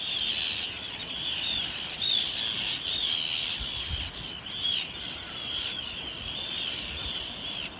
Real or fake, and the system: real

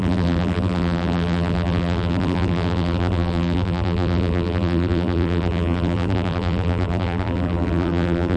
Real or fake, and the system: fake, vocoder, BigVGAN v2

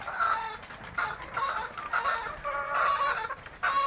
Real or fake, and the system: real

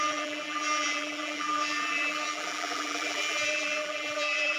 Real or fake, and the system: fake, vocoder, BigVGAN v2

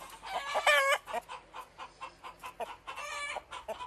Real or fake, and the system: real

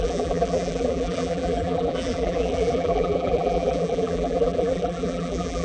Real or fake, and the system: fake, vocoder, BigVGAN v2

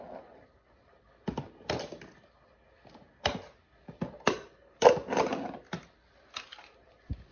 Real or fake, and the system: real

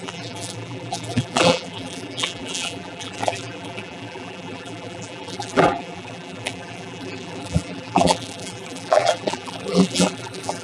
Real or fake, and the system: fake, vocoder, BigVGAN v2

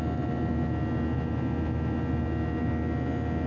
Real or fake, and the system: real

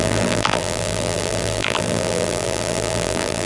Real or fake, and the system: fake, vocoder, BigVGAN v2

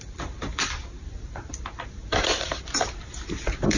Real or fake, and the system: fake, vocoder, BigVGAN v2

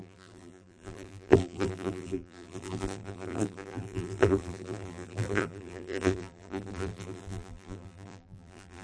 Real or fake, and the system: fake, vocoder, BigVGAN v2